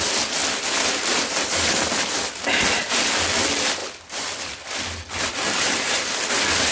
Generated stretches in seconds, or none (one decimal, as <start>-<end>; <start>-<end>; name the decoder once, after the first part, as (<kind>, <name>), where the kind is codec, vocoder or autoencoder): 0.4-2.3 (vocoder, BigVGAN v2); 3.8-6.3